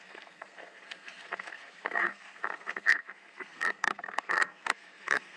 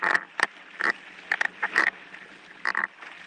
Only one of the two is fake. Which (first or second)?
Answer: first